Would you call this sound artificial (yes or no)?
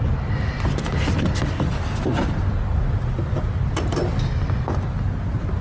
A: no